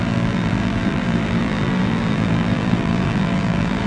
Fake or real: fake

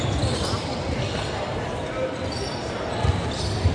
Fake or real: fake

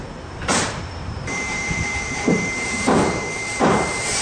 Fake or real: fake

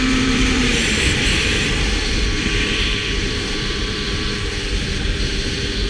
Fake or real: fake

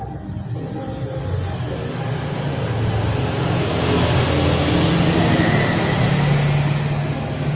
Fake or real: real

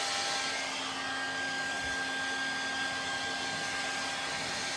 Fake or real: real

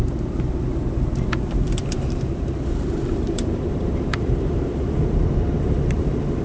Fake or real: fake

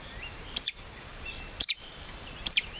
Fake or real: fake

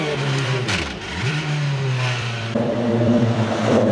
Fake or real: fake